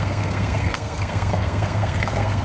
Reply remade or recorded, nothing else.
remade